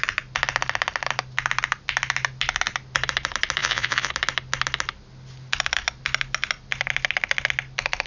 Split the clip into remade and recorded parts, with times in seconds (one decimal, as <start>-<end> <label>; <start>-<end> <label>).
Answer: 0.0-3.6 recorded; 3.6-4.1 remade; 4.1-8.1 recorded